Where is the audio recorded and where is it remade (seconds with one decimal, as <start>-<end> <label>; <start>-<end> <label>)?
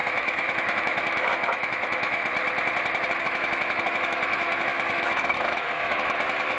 0.0-2.2 remade; 2.2-3.2 recorded; 3.2-6.6 remade